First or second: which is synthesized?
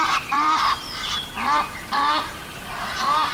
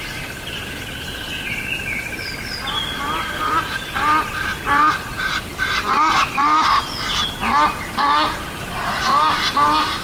first